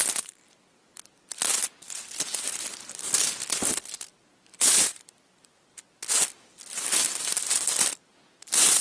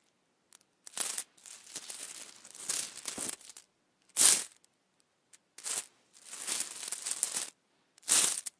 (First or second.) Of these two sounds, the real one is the second